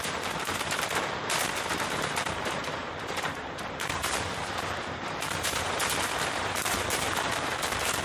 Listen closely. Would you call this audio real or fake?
fake